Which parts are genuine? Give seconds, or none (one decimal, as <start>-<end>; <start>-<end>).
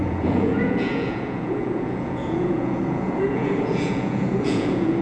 none